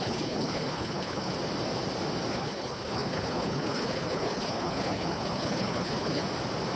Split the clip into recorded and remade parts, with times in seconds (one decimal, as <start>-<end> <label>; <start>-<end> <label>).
0.0-1.3 remade; 1.3-2.3 recorded; 2.3-6.2 remade; 6.2-6.8 recorded